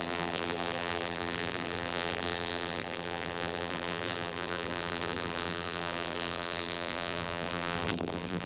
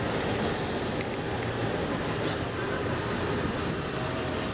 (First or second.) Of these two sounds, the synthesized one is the first